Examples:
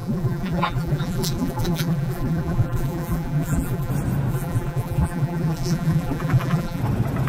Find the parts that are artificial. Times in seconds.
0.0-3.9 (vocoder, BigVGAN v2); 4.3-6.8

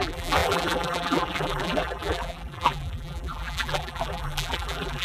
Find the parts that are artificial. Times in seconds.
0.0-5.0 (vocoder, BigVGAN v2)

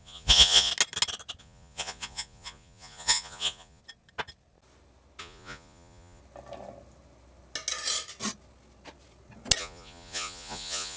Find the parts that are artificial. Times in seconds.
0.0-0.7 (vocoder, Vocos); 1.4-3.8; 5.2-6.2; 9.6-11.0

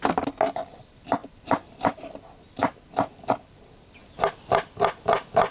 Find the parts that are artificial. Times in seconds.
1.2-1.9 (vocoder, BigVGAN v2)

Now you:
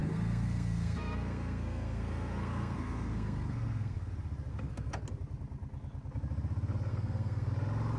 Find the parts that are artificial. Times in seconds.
0.0-4.1 (codec, SNAC); 4.5-5.0; 6.9-7.5

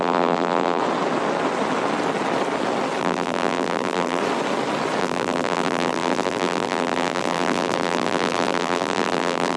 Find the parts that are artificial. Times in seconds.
0.0-0.8 (vocoder, BigVGAN v2); 3.0-4.2; 5.0-9.6